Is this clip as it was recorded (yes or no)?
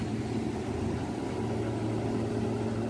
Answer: yes